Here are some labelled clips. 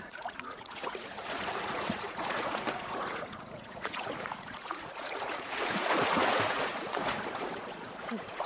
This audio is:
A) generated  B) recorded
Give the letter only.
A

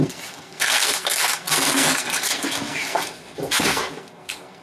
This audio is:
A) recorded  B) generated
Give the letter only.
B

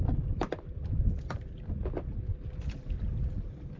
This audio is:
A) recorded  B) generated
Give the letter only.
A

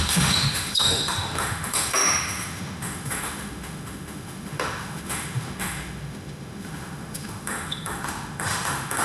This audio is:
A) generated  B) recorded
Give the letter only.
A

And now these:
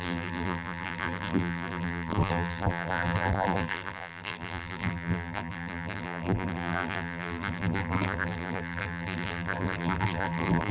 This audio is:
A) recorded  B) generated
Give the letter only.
B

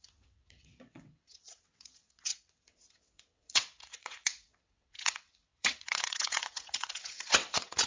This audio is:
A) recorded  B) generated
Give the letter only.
B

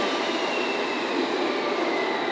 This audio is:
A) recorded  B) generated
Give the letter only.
A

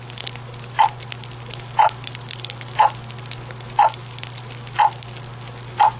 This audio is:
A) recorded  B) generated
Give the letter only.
A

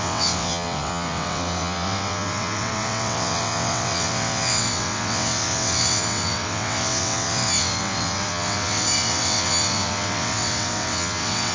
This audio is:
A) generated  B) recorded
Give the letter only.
A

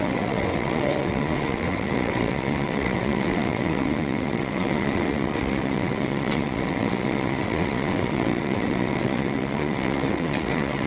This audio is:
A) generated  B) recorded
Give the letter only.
A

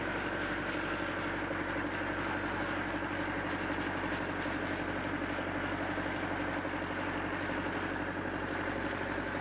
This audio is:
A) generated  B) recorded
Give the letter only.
B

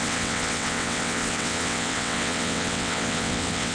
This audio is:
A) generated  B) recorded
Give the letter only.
A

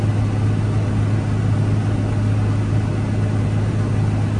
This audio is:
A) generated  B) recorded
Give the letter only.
B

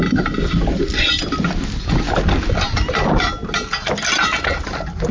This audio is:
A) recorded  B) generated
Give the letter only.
A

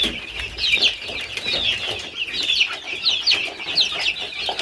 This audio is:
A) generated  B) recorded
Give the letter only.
B